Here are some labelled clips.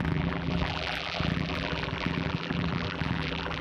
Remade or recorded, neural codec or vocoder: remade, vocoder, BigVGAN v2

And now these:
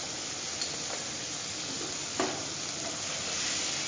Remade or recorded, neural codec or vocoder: recorded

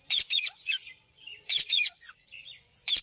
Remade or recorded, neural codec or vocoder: remade, vocoder, Vocos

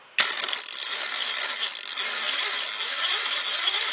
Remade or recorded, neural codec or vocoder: recorded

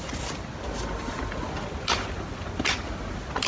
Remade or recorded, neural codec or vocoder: recorded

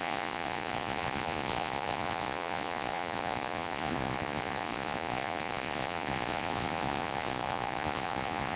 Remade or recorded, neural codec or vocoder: remade, vocoder, Vocos